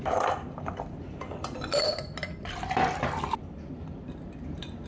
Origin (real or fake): real